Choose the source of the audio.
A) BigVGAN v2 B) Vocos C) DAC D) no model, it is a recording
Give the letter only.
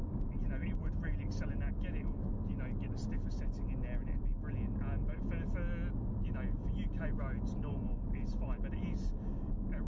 D